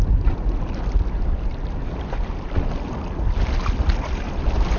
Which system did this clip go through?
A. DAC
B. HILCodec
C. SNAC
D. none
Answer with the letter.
D